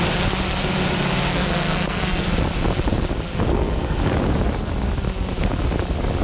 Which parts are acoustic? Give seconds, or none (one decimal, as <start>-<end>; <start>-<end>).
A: 0.0-1.3; 2.3-3.5; 4.0-6.2